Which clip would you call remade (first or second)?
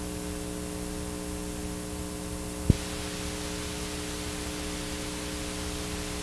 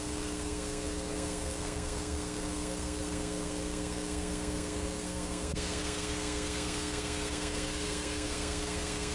second